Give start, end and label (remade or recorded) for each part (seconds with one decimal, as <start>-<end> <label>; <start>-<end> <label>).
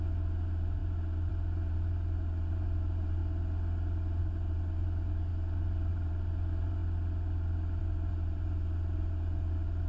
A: 0.0-3.2 remade; 3.2-4.2 recorded; 4.2-6.8 remade; 6.8-7.8 recorded; 7.8-9.9 remade